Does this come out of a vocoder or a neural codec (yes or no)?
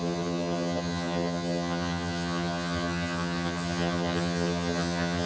yes